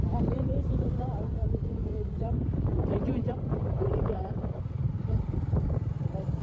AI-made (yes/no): yes